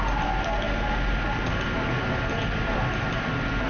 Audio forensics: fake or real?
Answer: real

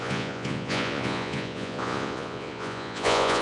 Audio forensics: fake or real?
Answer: fake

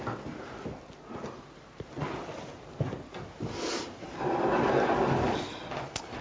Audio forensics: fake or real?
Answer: real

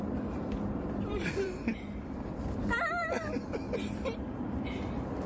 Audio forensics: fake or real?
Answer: fake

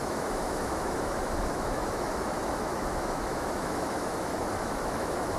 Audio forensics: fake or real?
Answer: fake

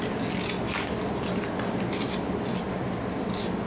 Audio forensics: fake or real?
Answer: real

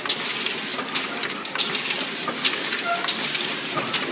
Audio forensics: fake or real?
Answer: real